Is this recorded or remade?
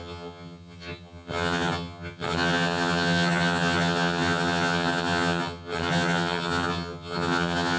remade